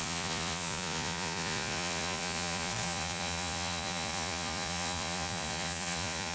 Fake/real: fake